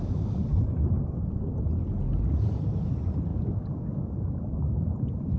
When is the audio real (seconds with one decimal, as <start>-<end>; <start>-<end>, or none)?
0.0-3.3; 4.3-5.4